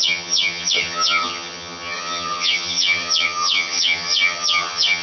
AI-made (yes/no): yes